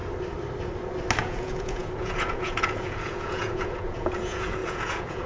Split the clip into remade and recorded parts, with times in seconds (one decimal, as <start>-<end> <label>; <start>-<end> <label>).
0.0-1.2 recorded; 1.2-5.3 remade